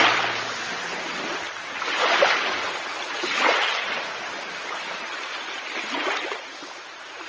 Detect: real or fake real